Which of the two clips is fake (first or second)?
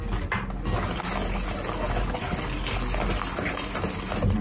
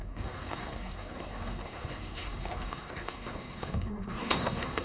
second